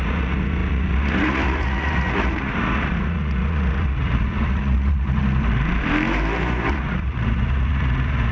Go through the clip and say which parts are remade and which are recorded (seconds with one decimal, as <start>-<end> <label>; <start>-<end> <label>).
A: 0.0-5.2 remade; 5.2-6.7 recorded; 6.7-8.3 remade